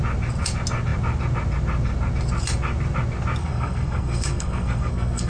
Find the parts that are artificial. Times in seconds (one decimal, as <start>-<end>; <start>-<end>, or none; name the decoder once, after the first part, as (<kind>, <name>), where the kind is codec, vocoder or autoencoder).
3.4-5.3 (codec, SNAC)